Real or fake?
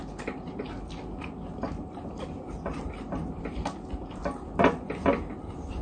real